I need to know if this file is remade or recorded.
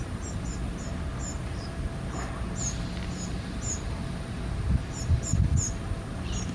recorded